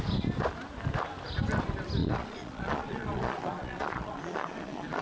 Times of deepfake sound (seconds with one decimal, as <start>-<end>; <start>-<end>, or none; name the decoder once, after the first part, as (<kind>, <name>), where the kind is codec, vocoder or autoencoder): 2.0-5.0 (vocoder, Vocos)